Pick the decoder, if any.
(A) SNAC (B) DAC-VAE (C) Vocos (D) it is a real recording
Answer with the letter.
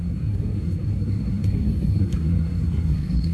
A